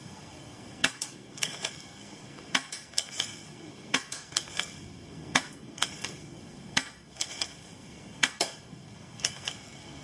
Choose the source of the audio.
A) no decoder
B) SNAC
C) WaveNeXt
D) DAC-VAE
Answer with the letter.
B